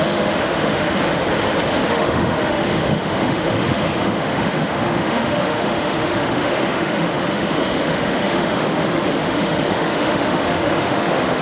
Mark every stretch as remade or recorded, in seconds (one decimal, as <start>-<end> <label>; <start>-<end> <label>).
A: 0.0-0.9 remade; 0.9-1.7 recorded; 1.7-11.4 remade